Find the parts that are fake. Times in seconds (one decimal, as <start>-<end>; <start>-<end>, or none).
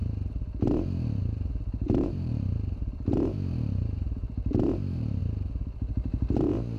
1.2-5.2; 5.9-6.8